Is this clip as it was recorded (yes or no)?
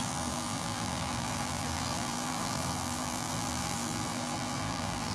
no